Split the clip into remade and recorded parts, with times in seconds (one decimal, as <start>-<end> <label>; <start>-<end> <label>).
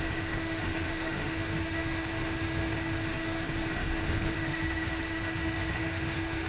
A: 0.0-6.5 remade